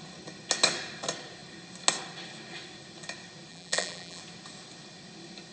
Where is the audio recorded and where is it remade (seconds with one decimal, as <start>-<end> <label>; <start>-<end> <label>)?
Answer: 0.0-3.5 recorded; 3.5-4.2 remade; 4.2-5.5 recorded